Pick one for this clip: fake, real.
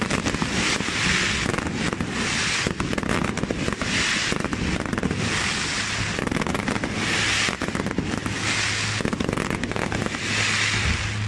real